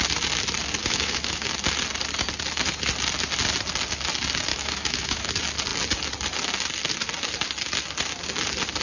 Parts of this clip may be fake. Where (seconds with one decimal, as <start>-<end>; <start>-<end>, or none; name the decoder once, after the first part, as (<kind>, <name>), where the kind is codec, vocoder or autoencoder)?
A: 0.8-1.5 (autoencoder, DAC-VAE); 4.5-5.3